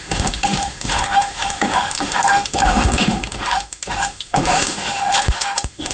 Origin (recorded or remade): remade